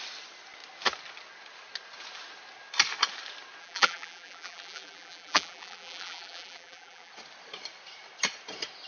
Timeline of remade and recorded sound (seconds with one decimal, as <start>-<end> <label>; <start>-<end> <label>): 0.0-3.6 recorded; 3.6-7.1 remade; 7.1-8.9 recorded